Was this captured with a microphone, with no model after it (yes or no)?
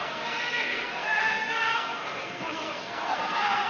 no